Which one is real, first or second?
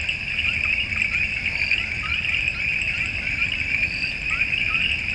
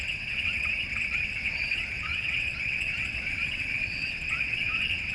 first